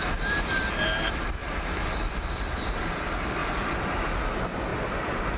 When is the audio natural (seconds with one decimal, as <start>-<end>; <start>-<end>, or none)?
0.0-5.4